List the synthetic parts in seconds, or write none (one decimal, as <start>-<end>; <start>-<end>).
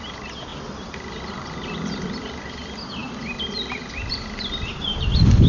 none